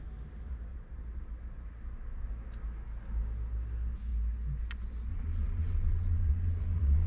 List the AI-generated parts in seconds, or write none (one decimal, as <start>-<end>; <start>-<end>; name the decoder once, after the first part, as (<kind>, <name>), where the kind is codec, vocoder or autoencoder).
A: 5.1-7.1 (vocoder, Vocos)